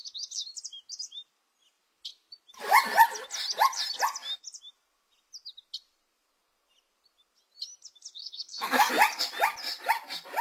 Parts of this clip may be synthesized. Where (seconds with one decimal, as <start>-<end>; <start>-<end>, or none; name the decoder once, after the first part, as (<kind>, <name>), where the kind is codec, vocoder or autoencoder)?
8.2-8.9 (codec, SNAC)